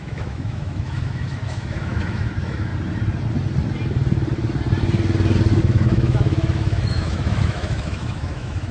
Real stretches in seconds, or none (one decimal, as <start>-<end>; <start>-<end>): 2.7-5.6